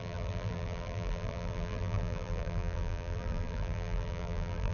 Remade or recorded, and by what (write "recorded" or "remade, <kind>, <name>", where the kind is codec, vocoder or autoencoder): remade, vocoder, BigVGAN v2